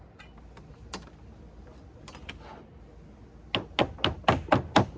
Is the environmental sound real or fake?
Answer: real